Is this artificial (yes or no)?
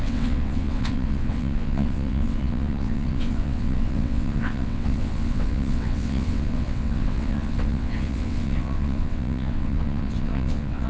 yes